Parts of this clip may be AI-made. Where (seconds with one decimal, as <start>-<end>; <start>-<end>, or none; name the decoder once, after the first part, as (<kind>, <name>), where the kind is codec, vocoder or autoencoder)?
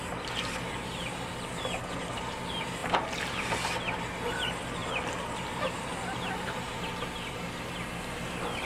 2.8-3.6 (vocoder, BigVGAN v2); 4.8-6.8